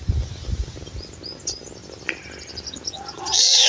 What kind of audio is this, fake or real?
real